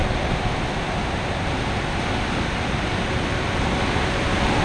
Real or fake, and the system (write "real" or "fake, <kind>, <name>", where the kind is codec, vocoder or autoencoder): real